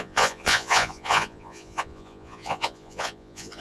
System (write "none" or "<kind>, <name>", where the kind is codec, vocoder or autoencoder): vocoder, Vocos